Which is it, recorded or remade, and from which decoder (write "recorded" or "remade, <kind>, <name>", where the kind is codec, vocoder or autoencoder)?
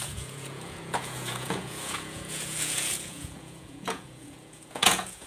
remade, vocoder, Vocos